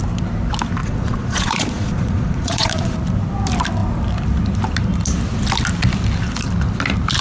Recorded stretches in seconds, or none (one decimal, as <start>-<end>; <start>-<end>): 0.0-0.8; 2.9-7.2